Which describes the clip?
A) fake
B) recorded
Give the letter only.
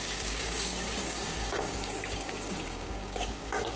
A